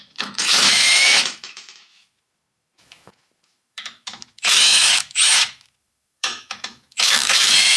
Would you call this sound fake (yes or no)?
yes